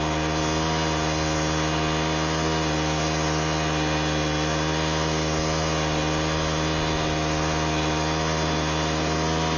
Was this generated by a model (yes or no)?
no